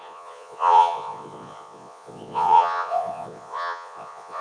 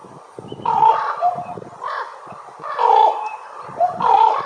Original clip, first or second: second